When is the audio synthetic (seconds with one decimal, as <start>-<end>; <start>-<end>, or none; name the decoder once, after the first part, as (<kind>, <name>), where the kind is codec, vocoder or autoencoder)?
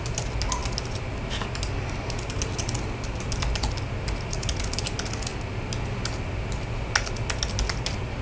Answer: none